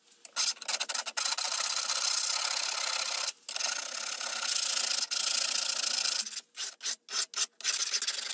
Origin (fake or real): real